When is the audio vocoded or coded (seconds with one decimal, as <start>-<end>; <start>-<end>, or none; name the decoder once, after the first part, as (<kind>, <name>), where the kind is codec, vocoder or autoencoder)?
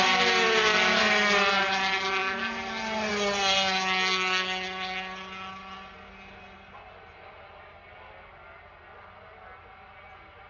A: none